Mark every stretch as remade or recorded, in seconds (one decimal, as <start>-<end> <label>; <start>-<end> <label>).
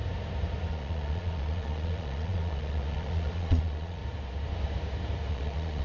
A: 0.0-0.7 recorded; 0.7-4.0 remade; 4.0-5.3 recorded; 5.3-5.8 remade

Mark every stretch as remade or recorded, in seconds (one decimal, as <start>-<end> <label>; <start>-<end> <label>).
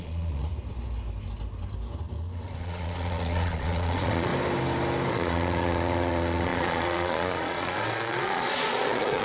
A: 0.0-0.5 remade; 0.5-2.6 recorded; 2.6-4.3 remade; 4.3-5.1 recorded; 5.1-9.2 remade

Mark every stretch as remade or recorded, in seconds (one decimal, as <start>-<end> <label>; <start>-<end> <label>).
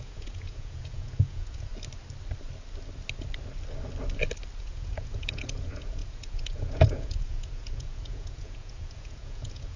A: 0.0-1.7 remade; 1.7-4.6 recorded; 4.6-9.8 remade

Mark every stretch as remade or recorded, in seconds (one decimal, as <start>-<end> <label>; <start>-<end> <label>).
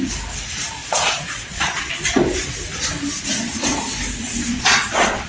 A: 0.0-0.8 recorded; 0.8-1.9 remade; 1.9-4.5 recorded; 4.5-5.3 remade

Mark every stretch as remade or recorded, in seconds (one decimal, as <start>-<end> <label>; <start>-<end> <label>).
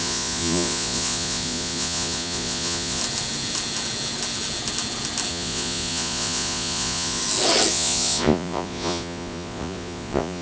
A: 0.0-3.0 remade; 3.0-5.3 recorded; 5.3-7.2 remade; 7.2-7.7 recorded; 7.7-10.4 remade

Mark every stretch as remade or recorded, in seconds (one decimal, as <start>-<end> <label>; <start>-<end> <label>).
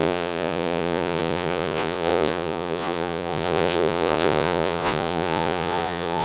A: 0.0-6.2 remade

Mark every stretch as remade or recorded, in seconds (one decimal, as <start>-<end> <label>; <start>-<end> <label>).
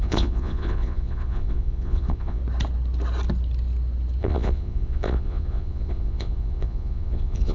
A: 0.0-2.4 remade; 2.4-4.2 recorded; 4.2-7.5 remade